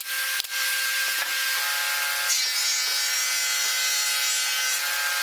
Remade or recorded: recorded